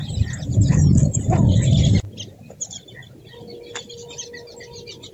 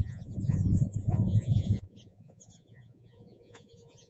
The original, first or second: first